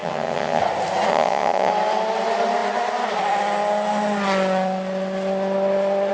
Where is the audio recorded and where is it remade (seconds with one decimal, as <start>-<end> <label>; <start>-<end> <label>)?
0.0-0.6 remade; 0.6-1.1 recorded; 1.1-1.7 remade; 1.7-6.1 recorded